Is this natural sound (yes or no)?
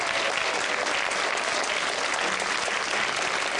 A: yes